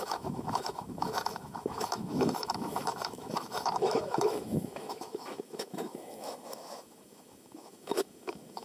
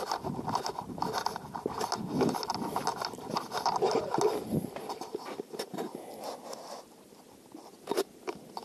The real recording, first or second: second